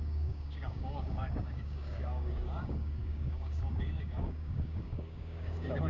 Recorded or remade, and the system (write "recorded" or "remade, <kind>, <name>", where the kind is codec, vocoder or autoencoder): remade, codec, DAC